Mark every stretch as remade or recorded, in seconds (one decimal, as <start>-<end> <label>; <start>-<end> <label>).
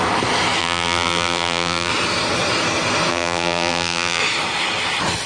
0.0-0.6 recorded; 0.6-1.9 remade; 1.9-3.1 recorded; 3.1-4.2 remade; 4.2-5.3 recorded